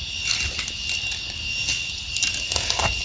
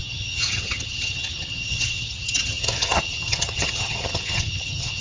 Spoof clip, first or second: second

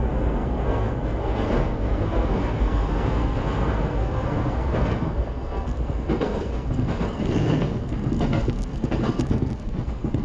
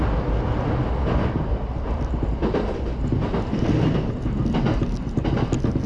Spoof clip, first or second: first